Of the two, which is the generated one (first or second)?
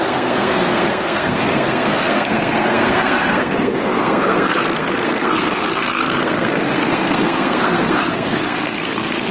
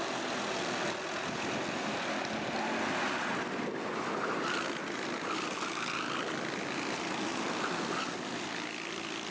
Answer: first